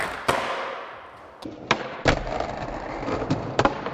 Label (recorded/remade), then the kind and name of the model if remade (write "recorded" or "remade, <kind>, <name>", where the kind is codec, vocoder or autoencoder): remade, vocoder, BigVGAN v2